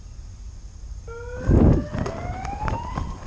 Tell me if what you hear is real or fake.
real